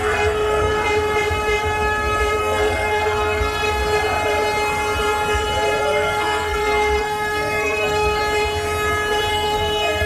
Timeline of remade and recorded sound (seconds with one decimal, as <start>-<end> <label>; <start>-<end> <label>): 0.0-0.7 remade; 0.7-2.4 recorded; 2.4-3.8 remade; 3.8-5.8 recorded; 5.8-8.2 remade; 8.2-9.3 recorded; 9.3-10.1 remade